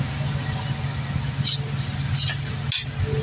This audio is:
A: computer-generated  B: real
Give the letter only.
B